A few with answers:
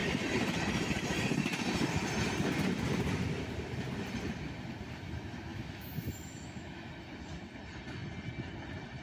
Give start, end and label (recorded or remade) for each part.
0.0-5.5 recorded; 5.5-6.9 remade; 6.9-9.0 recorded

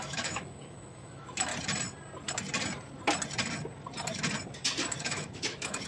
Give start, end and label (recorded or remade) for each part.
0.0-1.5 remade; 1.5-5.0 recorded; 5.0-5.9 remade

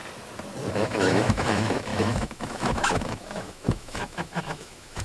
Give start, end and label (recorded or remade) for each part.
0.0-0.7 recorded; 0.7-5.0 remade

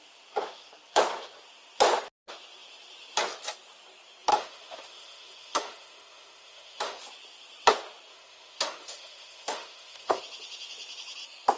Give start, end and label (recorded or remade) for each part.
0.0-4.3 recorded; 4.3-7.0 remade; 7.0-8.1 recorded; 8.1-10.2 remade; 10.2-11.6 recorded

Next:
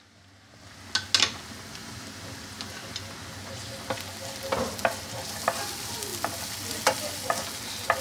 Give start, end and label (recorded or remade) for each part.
0.0-8.0 recorded

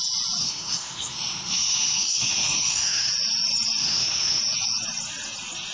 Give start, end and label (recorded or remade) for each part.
0.0-0.4 recorded; 0.4-3.1 remade; 3.1-3.8 recorded; 3.8-4.4 remade; 4.4-5.7 recorded